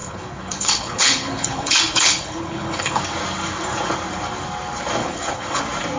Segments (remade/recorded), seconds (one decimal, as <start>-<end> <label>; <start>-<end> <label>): 0.0-3.0 remade; 3.0-5.0 recorded; 5.0-5.6 remade; 5.6-6.0 recorded